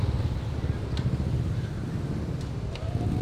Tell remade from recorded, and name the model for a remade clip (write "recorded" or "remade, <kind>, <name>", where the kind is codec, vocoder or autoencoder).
recorded